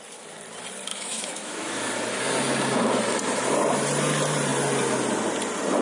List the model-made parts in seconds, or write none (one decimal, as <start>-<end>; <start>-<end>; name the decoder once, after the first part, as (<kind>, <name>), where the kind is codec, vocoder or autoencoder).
0.9-1.8 (autoencoder, DAC-VAE)